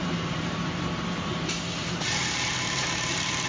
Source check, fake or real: fake